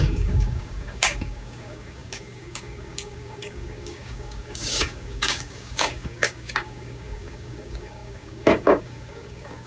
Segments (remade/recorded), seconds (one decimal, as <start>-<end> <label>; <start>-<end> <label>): 0.0-9.7 remade